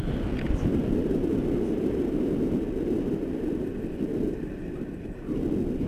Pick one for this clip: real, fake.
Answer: real